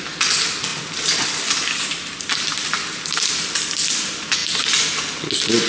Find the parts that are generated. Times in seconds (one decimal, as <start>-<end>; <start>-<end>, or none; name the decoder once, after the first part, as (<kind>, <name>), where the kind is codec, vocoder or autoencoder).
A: 0.7-3.3 (vocoder, BigVGAN v2)